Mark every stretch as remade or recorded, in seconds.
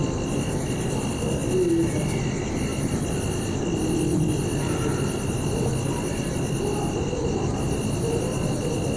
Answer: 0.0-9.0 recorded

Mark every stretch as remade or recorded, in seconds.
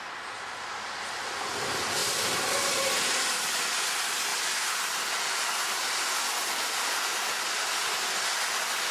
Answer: 0.0-8.9 recorded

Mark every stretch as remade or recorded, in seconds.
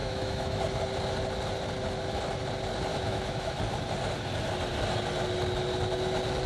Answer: 0.0-0.6 remade; 0.6-2.9 recorded; 2.9-3.6 remade; 3.6-6.5 recorded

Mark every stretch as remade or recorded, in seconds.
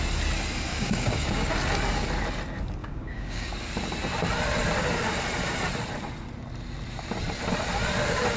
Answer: 0.0-0.7 recorded; 0.7-1.5 remade; 1.5-2.8 recorded; 2.8-3.5 remade; 3.5-8.4 recorded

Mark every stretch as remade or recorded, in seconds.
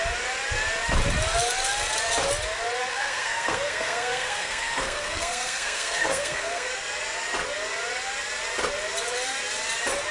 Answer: 0.0-2.8 recorded; 2.8-6.7 remade; 6.7-10.1 recorded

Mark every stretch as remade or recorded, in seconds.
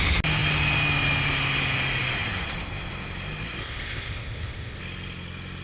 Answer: 0.0-3.6 recorded; 3.6-4.8 remade; 4.8-5.6 recorded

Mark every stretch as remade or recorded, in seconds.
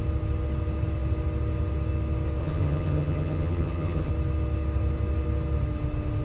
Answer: 0.0-2.4 recorded; 2.4-4.1 remade; 4.1-6.2 recorded